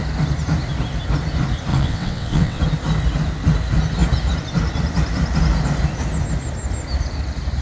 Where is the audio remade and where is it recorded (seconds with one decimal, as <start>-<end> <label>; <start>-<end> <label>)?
0.0-1.7 recorded; 1.7-2.6 remade; 2.6-7.6 recorded